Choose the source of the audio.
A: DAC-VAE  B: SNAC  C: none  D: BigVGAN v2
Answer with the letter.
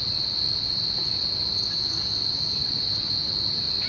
C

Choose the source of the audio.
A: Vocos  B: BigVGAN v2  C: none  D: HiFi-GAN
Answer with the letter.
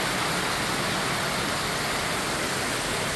C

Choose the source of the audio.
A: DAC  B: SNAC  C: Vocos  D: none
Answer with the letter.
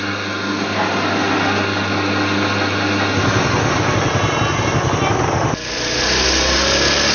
D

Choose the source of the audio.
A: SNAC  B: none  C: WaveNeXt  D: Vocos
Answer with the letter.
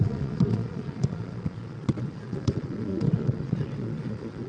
D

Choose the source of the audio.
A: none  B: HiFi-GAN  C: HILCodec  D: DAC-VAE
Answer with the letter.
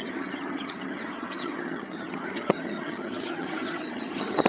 B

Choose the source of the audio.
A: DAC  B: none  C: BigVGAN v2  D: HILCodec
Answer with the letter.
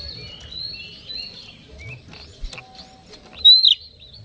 B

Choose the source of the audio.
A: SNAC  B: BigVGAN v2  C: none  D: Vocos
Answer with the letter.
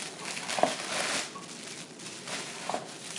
C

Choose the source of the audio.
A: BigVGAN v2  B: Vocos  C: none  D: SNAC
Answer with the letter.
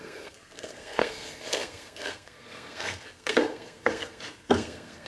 D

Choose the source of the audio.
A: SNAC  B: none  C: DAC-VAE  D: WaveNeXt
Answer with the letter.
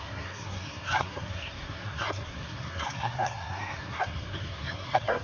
A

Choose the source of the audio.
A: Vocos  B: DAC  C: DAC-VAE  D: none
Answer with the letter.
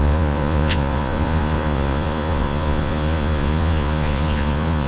A